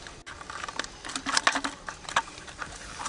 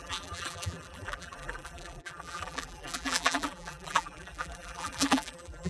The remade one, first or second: second